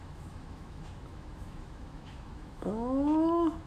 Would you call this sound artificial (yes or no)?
yes